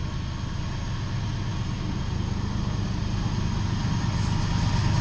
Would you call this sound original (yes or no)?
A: yes